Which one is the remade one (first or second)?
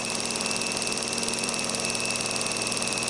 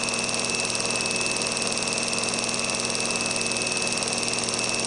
first